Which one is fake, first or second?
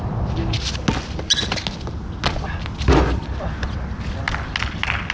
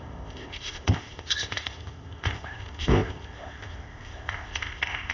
second